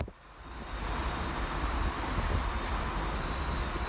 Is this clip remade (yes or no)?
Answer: no